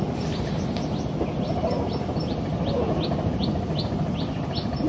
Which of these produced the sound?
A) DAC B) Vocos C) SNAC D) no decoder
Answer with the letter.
D